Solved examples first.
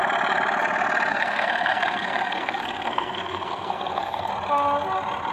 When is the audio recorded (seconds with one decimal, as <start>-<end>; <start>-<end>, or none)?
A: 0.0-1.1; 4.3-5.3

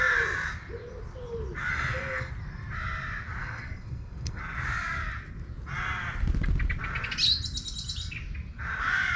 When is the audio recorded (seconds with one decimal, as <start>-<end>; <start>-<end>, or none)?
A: 0.0-1.7; 2.3-3.4; 4.4-9.2

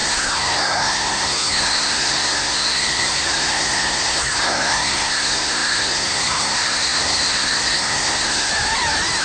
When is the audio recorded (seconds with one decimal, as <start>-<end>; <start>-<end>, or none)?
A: 8.5-9.2

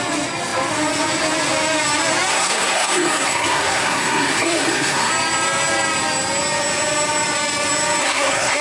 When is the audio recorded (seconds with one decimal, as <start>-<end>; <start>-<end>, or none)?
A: 0.0-2.3; 5.1-8.0

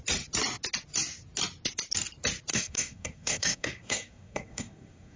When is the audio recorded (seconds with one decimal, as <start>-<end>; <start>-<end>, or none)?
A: 0.0-2.5